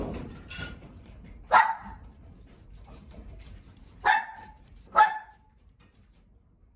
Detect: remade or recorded remade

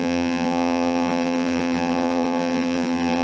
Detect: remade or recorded remade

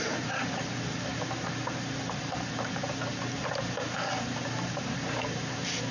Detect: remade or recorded remade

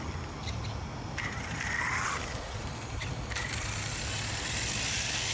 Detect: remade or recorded recorded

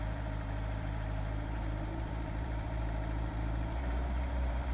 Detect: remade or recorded remade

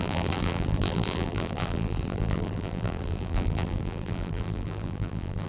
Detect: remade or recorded remade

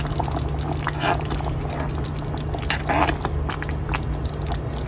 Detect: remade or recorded recorded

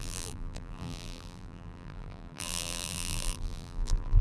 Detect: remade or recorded remade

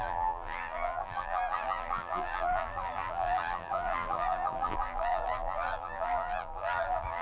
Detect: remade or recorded remade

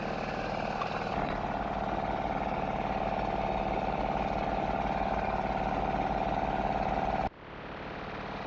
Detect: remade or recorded recorded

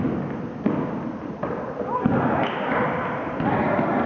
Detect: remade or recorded recorded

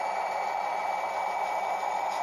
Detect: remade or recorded remade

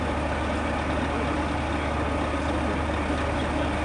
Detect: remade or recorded recorded